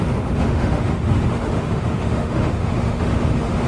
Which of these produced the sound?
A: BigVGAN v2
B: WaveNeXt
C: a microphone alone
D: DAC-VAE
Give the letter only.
D